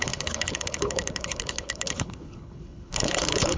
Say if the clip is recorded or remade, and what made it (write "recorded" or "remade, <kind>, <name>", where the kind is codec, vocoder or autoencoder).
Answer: remade, codec, HILCodec